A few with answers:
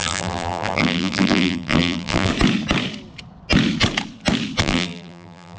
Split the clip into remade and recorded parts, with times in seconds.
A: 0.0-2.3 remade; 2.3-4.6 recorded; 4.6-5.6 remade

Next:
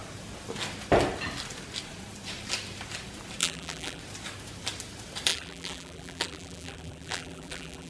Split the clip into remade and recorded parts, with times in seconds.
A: 0.0-3.4 recorded; 3.4-4.0 remade; 4.0-5.3 recorded; 5.3-7.9 remade

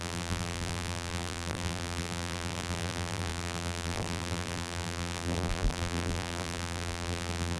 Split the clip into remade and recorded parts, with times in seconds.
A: 0.0-7.6 remade